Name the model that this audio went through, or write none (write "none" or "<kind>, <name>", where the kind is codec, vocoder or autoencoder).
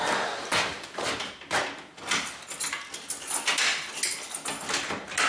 none